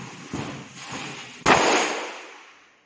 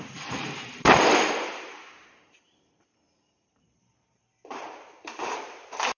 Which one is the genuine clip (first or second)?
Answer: first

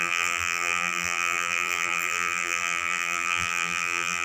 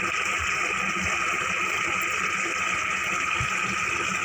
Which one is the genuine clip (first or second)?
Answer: second